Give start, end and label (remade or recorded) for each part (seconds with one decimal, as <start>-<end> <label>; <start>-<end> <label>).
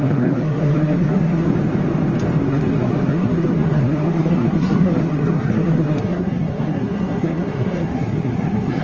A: 0.0-1.5 remade; 1.5-2.4 recorded; 2.4-8.8 remade